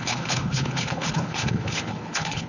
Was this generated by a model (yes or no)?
yes